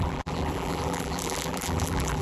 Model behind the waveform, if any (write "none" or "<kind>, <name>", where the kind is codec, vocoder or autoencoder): vocoder, BigVGAN v2